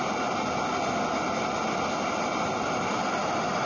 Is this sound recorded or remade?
recorded